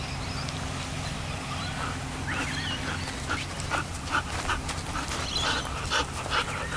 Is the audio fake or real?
real